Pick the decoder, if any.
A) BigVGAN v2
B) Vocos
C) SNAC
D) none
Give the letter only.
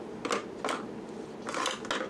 D